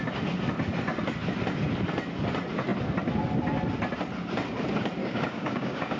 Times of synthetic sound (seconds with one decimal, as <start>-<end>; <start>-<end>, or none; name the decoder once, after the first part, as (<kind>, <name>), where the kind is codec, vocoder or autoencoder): 5.0-6.0 (codec, DAC)